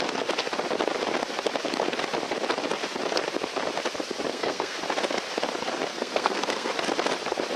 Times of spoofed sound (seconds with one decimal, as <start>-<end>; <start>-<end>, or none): 4.3-4.8; 5.9-6.7

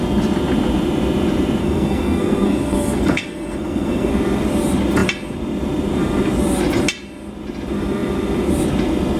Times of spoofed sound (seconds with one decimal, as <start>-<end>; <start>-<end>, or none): 1.6-4.1

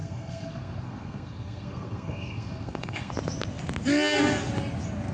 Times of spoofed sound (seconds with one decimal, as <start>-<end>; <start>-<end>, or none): 0.0-3.1

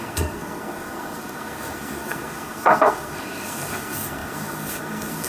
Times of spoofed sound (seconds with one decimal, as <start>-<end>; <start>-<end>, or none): 0.0-5.3

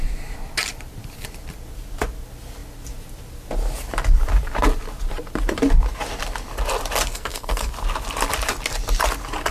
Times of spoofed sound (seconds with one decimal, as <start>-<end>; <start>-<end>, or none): 7.1-7.7